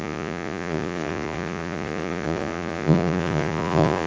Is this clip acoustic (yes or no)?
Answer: no